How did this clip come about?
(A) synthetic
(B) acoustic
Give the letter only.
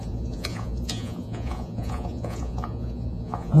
A